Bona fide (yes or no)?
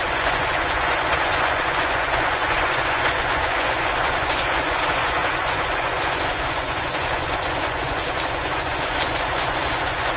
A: no